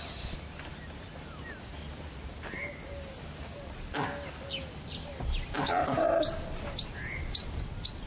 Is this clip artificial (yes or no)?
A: no